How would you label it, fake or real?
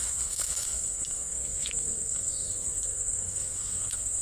fake